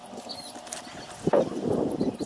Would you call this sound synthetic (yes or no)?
no